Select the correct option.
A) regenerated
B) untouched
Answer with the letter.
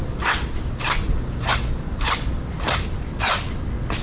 B